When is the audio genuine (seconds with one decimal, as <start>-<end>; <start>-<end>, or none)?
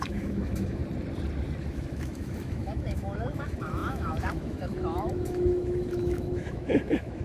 0.8-1.7